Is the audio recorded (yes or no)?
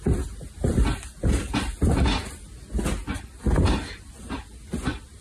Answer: yes